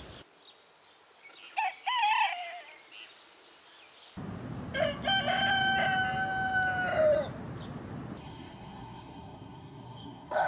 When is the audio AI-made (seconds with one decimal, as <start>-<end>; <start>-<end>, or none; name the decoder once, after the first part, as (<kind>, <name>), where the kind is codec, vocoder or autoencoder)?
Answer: 8.2-10.5 (codec, SNAC)